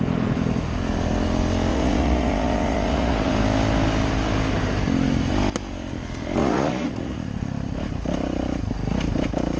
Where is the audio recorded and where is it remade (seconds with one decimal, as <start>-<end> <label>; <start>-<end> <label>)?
0.0-1.7 recorded; 1.7-3.3 remade; 3.3-6.4 recorded; 6.4-7.5 remade; 7.5-9.6 recorded